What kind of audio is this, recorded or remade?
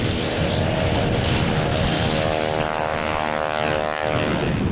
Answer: recorded